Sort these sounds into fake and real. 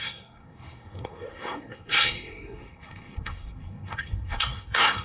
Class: fake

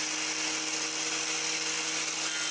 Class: real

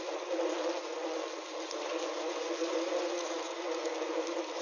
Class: real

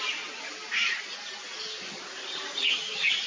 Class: real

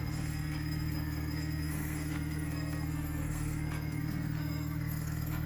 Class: fake